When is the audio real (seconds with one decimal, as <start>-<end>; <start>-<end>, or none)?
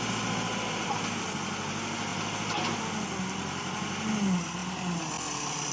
0.0-5.7